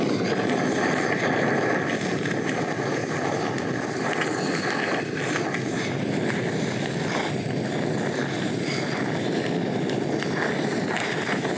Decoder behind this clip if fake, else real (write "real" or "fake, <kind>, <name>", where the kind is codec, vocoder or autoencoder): real